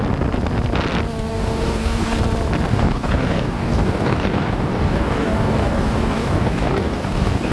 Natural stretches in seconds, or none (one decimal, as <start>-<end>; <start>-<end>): 0.0-1.3; 2.2-2.7